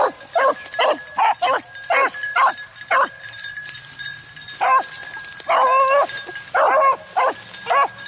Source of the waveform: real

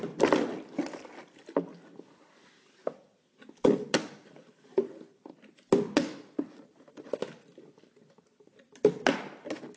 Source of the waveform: real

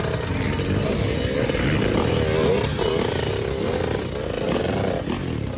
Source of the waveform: real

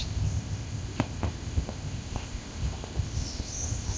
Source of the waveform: fake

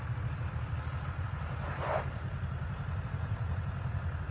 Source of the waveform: real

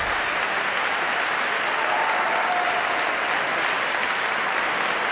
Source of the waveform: real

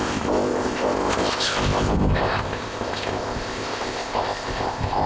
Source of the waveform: fake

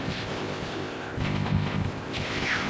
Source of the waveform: fake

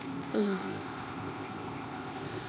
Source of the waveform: fake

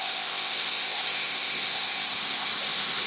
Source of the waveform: fake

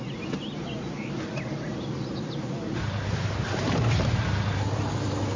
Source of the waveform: real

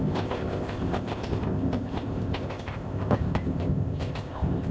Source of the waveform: fake